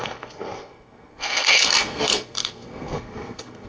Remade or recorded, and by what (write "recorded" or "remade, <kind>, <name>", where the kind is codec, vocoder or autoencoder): remade, codec, SNAC